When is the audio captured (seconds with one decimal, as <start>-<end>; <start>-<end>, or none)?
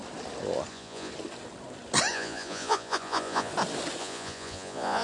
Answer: 0.0-0.7; 1.1-2.1; 3.5-4.0